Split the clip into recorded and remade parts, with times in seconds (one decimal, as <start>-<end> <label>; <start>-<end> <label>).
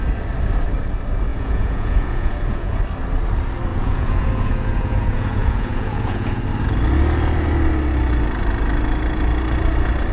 0.0-1.3 recorded; 1.3-2.8 remade; 2.8-3.7 recorded; 3.7-6.4 remade; 6.4-10.1 recorded